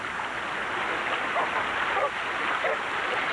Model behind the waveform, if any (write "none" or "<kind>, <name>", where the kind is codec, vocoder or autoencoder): none